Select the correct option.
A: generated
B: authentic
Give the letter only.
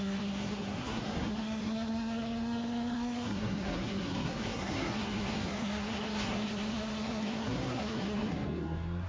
A